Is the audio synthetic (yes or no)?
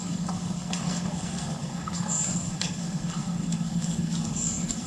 yes